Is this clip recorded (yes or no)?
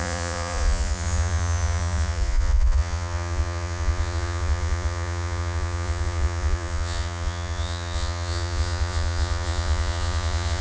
no